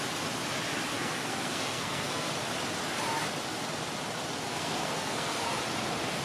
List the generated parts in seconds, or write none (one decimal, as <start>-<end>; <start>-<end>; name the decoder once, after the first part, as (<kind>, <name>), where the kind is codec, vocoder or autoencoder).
0.9-2.3 (codec, SNAC); 4.5-5.5